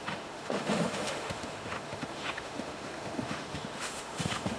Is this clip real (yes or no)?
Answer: no